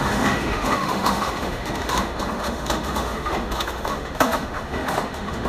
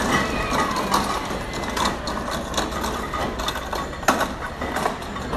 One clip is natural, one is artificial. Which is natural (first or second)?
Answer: second